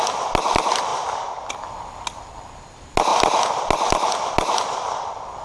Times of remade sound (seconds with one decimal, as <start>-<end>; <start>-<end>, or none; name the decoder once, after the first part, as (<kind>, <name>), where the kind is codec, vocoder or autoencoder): none